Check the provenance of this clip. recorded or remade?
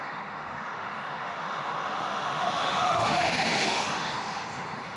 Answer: remade